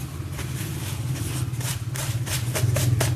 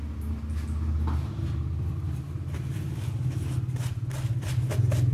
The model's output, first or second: first